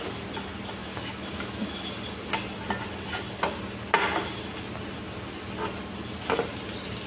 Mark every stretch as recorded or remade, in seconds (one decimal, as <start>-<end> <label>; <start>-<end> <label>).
0.0-0.8 recorded; 0.8-1.9 remade; 1.9-7.1 recorded